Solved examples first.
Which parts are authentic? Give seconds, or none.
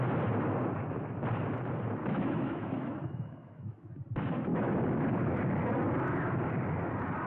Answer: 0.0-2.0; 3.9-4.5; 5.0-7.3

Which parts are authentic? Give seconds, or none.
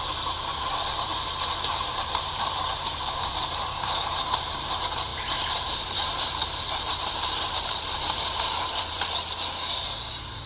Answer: none